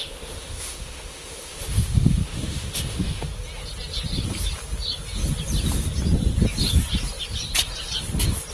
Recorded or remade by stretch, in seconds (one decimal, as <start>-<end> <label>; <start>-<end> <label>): 0.0-3.3 remade; 3.3-8.5 recorded